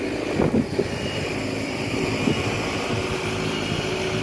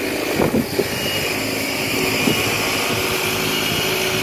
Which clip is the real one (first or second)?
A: second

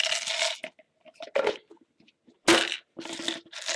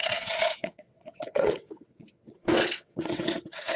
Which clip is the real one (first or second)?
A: first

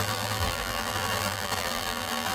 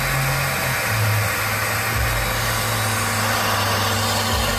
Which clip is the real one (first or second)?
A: second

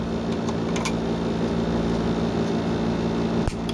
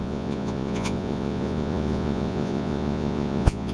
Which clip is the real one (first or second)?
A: first